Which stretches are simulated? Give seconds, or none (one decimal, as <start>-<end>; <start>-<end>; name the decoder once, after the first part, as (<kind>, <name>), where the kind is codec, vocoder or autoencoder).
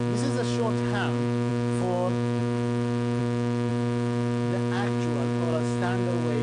none